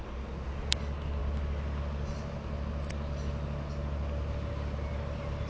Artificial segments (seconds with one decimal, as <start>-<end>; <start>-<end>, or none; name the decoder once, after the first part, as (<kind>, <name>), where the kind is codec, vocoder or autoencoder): none